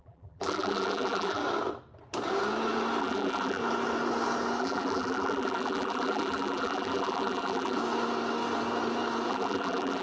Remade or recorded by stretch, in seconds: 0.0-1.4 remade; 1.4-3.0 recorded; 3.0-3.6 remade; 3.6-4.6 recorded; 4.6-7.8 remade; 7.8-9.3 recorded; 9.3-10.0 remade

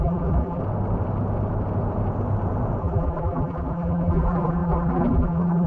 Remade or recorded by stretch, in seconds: 0.0-0.6 remade; 0.6-2.8 recorded; 2.8-5.7 remade

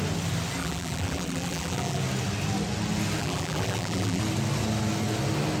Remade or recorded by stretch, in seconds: 0.0-0.6 recorded; 0.6-2.0 remade; 2.0-3.2 recorded; 3.2-4.2 remade; 4.2-5.6 recorded

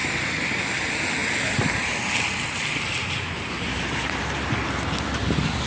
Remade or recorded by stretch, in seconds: 0.0-0.6 remade; 0.6-3.0 recorded; 3.0-4.2 remade; 4.2-5.7 recorded

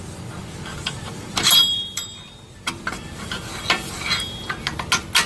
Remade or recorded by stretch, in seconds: 0.0-0.7 recorded; 0.7-2.9 remade; 2.9-5.3 recorded

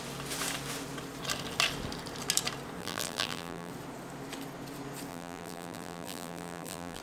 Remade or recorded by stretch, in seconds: 0.0-2.8 recorded; 2.8-3.7 remade; 3.7-5.1 recorded; 5.1-7.0 remade